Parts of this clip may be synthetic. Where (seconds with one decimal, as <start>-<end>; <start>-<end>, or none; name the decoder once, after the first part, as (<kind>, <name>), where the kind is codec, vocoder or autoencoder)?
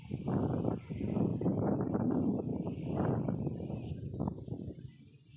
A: 1.3-2.1 (vocoder, BigVGAN v2)